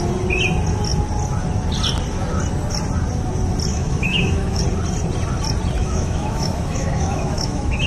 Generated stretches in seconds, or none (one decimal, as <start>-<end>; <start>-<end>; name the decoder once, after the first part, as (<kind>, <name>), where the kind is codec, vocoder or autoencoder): 3.7-4.6 (autoencoder, DAC-VAE); 5.8-7.9